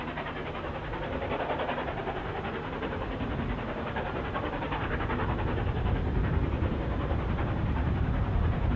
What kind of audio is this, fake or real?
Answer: fake